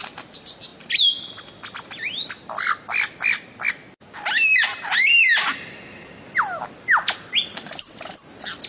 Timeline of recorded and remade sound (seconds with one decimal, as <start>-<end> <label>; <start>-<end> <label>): 0.0-8.7 recorded